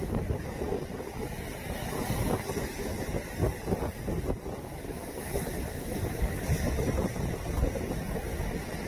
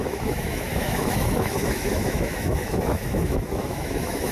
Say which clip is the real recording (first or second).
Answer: first